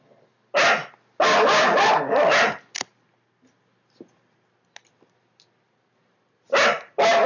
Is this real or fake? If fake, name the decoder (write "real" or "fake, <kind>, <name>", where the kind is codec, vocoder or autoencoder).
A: real